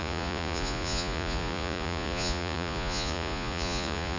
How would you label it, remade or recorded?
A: remade